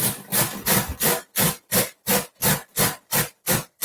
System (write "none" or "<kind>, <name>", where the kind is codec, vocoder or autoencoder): none